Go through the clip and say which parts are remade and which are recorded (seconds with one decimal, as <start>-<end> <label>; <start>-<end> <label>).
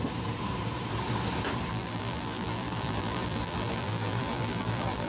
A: 0.0-1.7 recorded; 1.7-5.1 remade